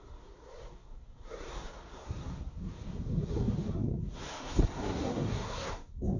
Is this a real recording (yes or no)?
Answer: no